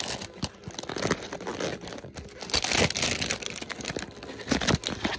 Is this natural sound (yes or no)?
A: yes